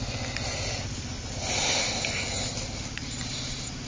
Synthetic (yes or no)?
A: no